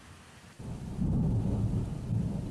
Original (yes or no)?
yes